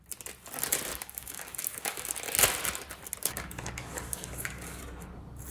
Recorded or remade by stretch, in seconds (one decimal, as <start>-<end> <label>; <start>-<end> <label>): 0.0-0.9 recorded; 0.9-2.1 remade; 2.1-3.2 recorded; 3.2-4.8 remade; 4.8-5.5 recorded